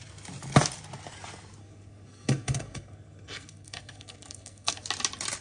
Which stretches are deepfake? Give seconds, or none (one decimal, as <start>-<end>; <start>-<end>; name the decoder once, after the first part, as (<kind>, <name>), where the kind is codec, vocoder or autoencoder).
1.6-4.8 (codec, SNAC)